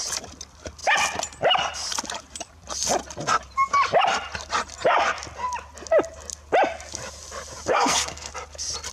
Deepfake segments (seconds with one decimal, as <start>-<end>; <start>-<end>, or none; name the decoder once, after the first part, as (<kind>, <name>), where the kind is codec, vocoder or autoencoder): 7.7-8.3 (codec, SNAC)